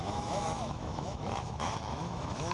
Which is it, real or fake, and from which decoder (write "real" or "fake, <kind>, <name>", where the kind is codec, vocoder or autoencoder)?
fake, autoencoder, DAC-VAE